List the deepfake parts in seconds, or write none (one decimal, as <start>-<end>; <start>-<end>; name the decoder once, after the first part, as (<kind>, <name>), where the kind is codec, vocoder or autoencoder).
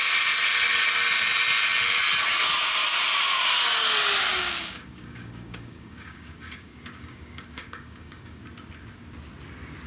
4.3-8.4 (codec, DAC)